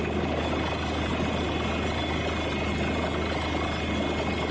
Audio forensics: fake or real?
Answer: real